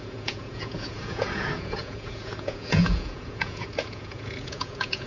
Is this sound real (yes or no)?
no